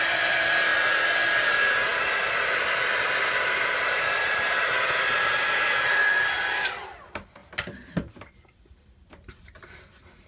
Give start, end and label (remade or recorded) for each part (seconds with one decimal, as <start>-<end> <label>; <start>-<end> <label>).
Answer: 0.0-0.7 remade; 0.7-1.4 recorded; 1.4-7.4 remade; 7.4-8.2 recorded; 8.2-10.3 remade